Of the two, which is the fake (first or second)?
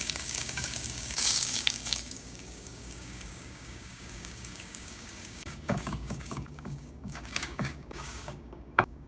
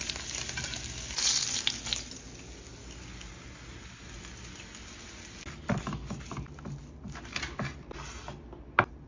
first